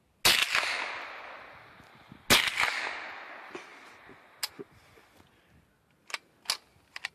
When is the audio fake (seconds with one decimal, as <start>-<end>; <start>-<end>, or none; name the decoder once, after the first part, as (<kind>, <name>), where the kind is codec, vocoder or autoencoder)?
none